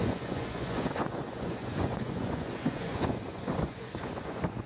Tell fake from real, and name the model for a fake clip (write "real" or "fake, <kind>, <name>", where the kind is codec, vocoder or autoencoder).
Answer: fake, vocoder, Vocos